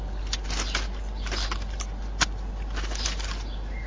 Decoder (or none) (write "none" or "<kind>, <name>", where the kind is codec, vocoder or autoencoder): none